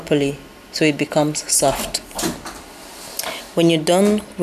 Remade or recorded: recorded